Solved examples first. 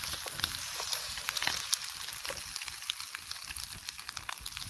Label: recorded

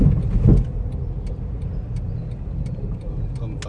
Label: recorded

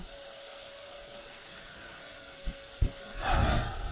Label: remade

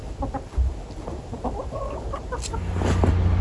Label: recorded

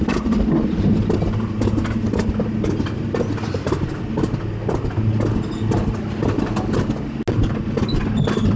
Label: recorded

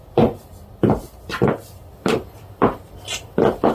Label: recorded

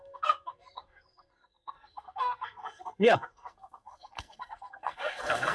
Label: remade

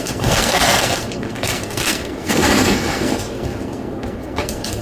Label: remade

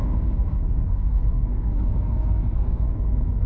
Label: remade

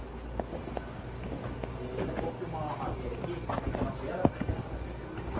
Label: recorded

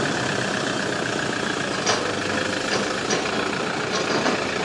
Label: recorded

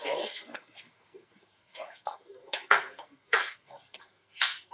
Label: remade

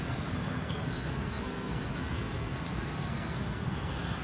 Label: remade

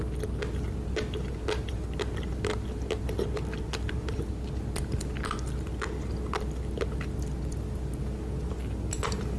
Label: recorded